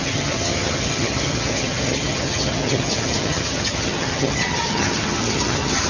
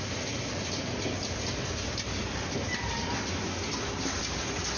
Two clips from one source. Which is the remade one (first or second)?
first